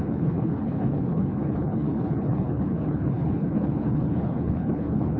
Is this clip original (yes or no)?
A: no